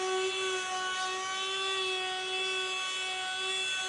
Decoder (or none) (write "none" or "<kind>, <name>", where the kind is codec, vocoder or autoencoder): none